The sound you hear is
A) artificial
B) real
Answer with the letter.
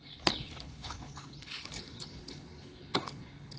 A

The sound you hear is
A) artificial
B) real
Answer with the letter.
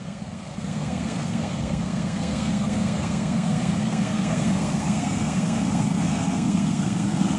A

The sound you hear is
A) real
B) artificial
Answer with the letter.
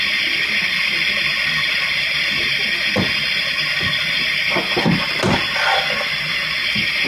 A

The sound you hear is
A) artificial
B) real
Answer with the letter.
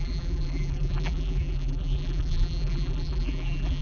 A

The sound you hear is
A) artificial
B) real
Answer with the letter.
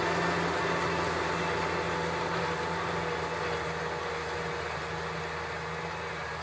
B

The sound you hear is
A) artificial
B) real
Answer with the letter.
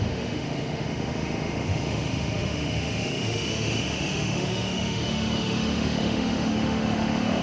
A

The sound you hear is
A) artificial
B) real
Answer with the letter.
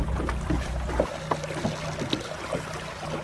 B